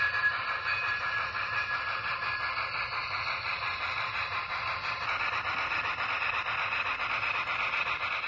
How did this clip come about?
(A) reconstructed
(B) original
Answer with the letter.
B